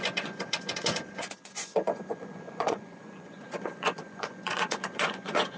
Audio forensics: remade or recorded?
remade